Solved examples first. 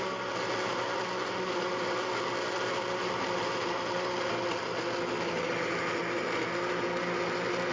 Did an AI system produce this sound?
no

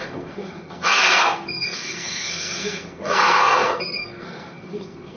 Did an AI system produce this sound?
yes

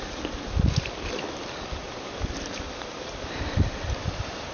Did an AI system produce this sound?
no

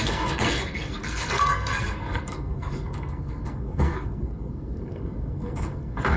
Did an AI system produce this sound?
yes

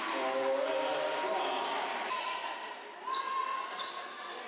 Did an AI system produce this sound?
no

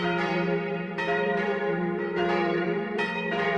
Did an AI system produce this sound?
yes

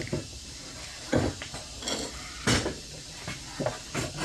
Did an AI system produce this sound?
no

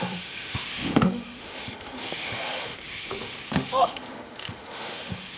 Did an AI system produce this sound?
yes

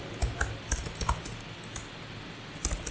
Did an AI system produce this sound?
no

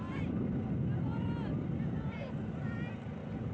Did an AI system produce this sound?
no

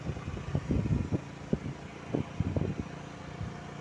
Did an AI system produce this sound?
no